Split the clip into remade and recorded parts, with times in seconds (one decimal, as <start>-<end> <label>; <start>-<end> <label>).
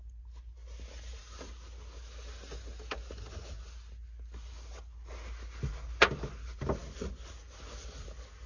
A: 0.0-8.5 recorded